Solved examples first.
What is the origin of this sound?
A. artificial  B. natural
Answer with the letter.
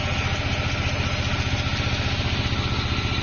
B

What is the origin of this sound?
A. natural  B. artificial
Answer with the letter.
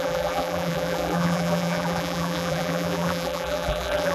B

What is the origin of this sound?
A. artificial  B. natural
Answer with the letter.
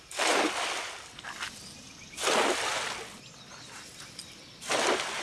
B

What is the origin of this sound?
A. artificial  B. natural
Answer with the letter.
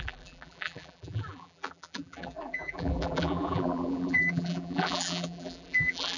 A